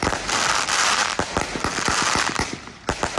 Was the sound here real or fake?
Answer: real